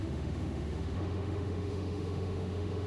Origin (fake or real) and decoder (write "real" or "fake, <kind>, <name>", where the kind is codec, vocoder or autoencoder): fake, autoencoder, DAC-VAE